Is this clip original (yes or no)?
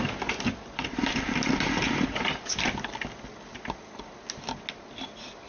yes